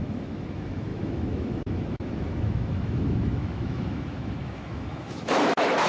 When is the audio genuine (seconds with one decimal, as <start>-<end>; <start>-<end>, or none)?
none